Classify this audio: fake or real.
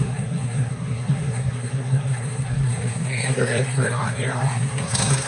fake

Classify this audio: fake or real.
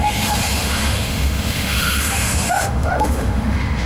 fake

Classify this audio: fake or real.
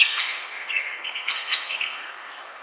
fake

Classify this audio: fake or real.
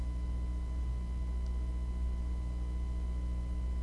real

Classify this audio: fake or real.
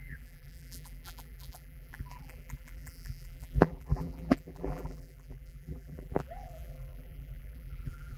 fake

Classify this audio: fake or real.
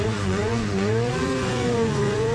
fake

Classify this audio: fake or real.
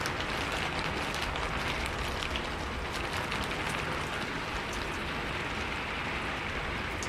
real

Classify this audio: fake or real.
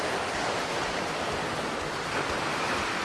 real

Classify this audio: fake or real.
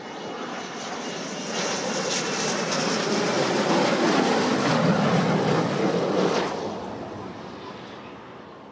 real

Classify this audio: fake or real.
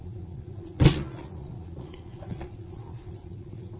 fake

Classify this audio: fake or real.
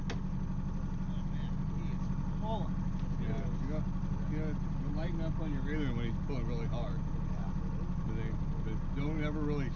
real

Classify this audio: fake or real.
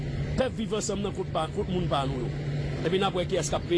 real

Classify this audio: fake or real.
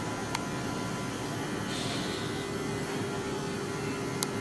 real